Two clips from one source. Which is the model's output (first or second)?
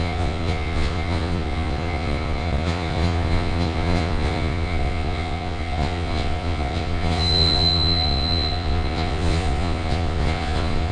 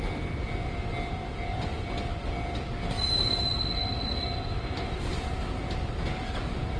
first